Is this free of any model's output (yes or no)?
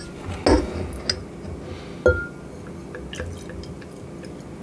yes